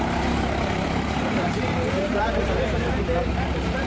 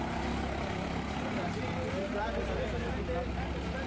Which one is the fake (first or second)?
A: first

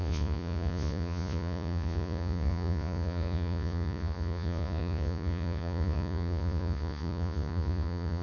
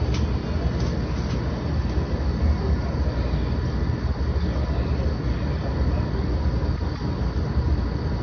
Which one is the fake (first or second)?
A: first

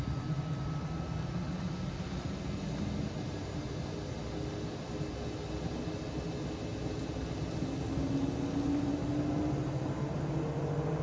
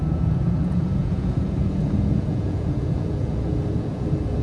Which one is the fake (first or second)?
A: second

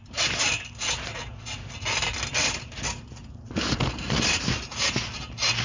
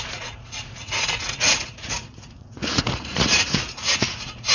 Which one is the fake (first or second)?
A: second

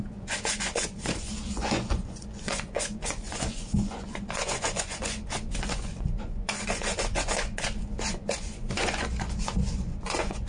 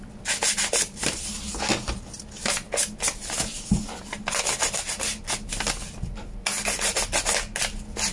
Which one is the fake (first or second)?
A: first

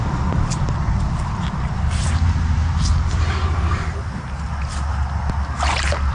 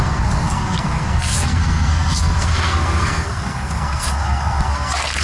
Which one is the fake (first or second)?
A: second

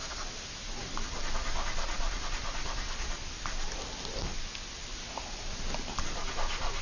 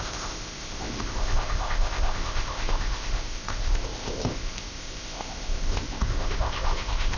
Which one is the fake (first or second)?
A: second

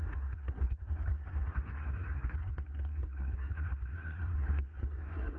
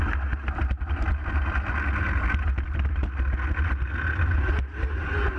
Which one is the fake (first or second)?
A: first